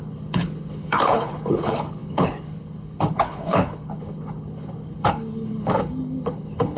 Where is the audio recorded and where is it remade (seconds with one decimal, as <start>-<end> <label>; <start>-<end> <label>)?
0.0-6.8 remade